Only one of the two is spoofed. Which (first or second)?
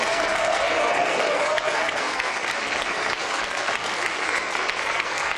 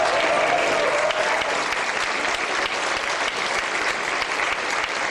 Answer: first